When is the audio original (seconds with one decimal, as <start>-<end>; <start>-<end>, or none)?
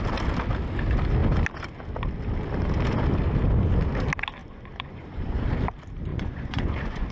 0.0-4.4; 5.4-6.1